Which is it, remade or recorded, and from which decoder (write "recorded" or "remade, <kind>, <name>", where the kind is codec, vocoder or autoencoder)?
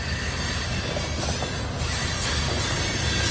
recorded